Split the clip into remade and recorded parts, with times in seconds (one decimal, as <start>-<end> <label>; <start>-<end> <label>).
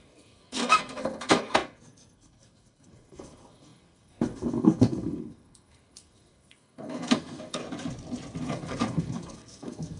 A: 0.0-7.6 remade; 7.6-8.4 recorded; 8.4-10.0 remade